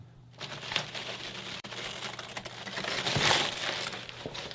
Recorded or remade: remade